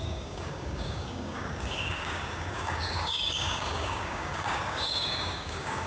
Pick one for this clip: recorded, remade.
remade